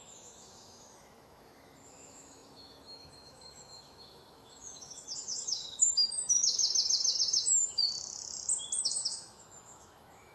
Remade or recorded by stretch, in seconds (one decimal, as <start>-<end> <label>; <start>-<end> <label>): 0.0-6.6 remade; 6.6-7.2 recorded; 7.2-7.8 remade; 7.8-8.8 recorded; 8.8-10.3 remade

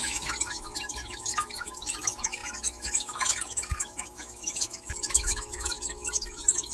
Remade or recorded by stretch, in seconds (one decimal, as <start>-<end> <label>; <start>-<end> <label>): 0.0-6.7 remade

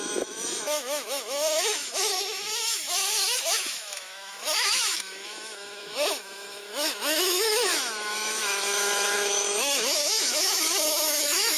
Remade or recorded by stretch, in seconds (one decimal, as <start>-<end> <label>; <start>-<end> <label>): 0.0-11.6 remade

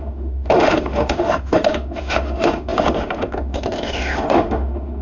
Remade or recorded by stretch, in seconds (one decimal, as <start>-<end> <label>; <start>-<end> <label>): 0.0-5.0 remade